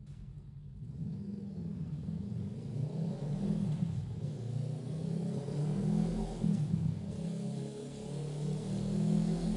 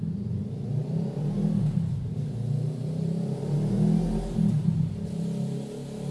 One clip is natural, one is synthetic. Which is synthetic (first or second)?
first